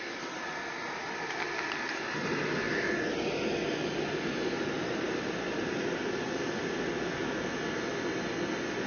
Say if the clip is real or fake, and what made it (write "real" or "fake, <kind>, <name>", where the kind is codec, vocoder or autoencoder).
real